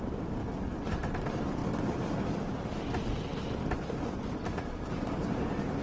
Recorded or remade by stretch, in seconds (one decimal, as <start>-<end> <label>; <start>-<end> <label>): 0.0-0.4 remade; 0.4-1.2 recorded; 1.2-1.6 remade; 1.6-4.1 recorded; 4.1-5.8 remade